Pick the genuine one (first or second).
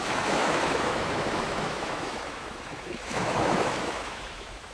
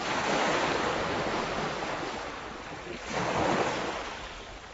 second